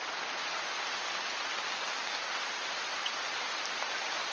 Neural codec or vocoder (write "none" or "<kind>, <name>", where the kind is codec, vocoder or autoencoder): none